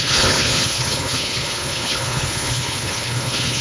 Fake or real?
fake